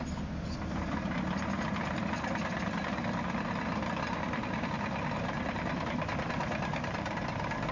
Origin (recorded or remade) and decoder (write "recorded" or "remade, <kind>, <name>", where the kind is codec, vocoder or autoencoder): recorded